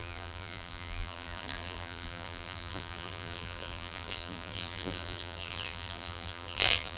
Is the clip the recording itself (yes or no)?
no